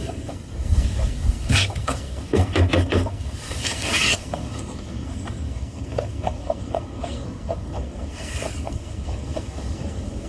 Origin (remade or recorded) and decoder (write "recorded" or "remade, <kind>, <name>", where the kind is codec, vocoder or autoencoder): remade, codec, SNAC